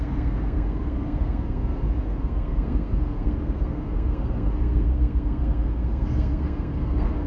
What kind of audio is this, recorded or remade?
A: remade